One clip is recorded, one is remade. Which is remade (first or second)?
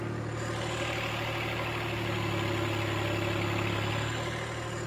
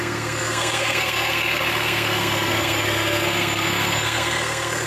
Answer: second